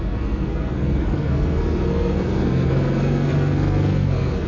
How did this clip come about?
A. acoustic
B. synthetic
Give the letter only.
B